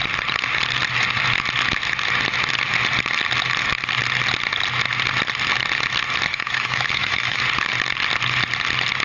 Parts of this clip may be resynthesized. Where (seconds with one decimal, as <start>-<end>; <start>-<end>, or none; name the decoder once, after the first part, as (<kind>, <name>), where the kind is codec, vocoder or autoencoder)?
6.3-7.4 (autoencoder, DAC-VAE)

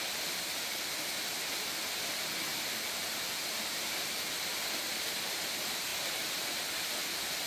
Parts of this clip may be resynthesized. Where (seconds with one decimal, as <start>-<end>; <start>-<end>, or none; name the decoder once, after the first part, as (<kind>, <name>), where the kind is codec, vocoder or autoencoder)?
0.0-7.5 (vocoder, BigVGAN v2)

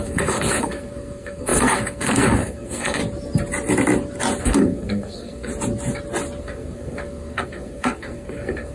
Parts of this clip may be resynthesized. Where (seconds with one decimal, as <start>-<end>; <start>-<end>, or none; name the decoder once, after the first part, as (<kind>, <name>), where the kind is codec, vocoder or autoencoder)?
0.0-3.0 (codec, SNAC); 4.4-5.5; 6.4-8.7

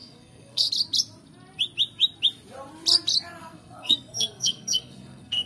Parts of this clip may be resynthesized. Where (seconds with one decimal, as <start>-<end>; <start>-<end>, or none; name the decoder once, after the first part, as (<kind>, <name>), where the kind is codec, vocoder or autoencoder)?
0.0-0.7 (codec, SNAC); 3.4-5.5

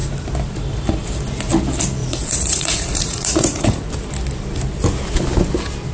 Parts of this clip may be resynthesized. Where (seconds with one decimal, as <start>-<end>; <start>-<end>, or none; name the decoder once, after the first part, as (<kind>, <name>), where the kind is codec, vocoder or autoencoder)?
2.0-3.9 (vocoder, Vocos)

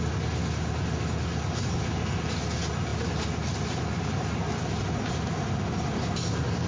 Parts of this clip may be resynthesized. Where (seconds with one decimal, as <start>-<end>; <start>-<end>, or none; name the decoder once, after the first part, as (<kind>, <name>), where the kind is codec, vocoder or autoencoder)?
none

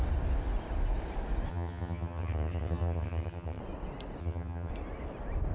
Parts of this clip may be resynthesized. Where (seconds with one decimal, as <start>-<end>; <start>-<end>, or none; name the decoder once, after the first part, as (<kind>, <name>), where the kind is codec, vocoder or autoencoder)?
1.5-3.6 (vocoder, HiFi-GAN); 4.2-4.7